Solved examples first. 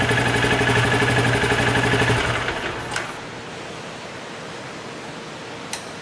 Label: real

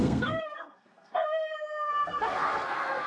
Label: fake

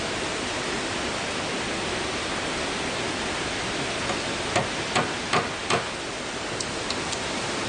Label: real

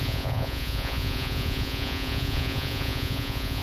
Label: fake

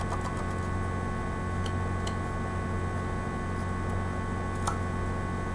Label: real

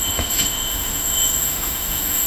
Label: fake